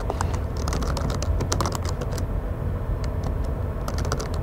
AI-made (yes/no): no